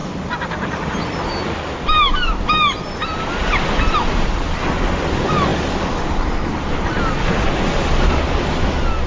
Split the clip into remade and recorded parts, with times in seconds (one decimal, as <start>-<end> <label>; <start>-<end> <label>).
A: 0.0-9.1 recorded